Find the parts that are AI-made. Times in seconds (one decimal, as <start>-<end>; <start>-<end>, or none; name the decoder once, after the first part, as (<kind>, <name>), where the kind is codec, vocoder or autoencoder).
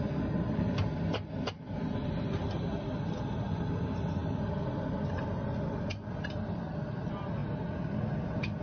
none